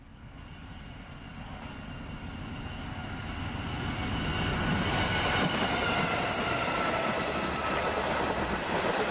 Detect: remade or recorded recorded